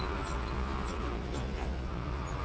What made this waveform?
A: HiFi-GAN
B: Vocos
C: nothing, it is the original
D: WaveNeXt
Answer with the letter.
B